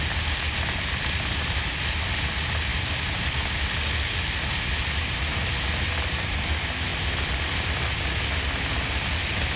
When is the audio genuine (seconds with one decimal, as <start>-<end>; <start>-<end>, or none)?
0.0-9.6

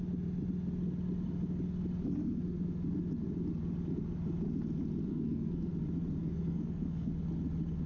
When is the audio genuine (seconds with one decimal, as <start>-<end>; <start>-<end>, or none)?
0.0-5.1; 5.7-6.2; 7.1-7.9